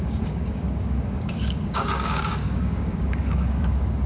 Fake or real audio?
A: fake